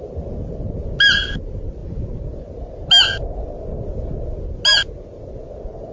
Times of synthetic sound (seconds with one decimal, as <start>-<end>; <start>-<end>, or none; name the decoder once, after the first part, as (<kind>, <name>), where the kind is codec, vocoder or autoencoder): none